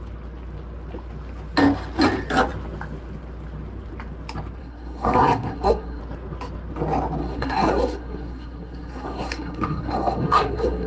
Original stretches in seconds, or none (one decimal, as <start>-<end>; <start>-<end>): 0.0-4.6; 6.0-7.2